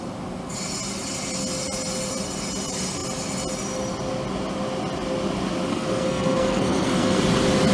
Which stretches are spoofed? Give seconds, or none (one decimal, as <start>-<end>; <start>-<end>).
5.7-7.2